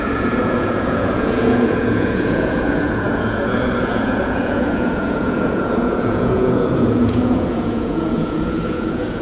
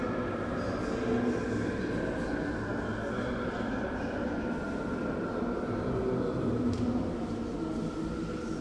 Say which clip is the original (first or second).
second